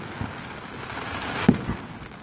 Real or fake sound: real